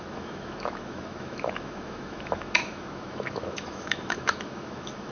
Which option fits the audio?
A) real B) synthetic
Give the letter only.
B